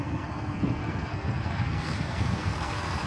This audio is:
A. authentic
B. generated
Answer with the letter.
B